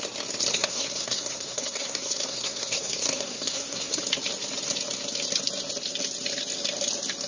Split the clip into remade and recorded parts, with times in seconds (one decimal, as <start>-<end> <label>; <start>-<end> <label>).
0.0-0.5 recorded; 0.5-4.0 remade; 4.0-7.3 recorded